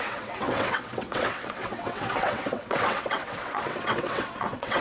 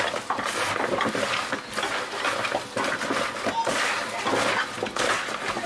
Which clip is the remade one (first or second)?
first